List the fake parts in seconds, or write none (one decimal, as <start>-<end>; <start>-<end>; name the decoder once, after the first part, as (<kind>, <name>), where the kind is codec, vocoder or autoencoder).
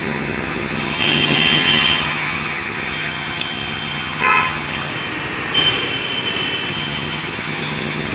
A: 0.0-4.9 (vocoder, HiFi-GAN); 6.7-8.1